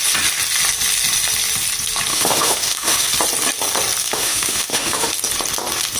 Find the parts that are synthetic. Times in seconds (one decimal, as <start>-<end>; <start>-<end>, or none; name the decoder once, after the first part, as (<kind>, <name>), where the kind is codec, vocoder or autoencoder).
2.1-3.1 (autoencoder, DAC-VAE); 4.0-5.1